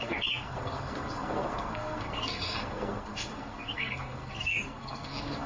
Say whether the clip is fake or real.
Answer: fake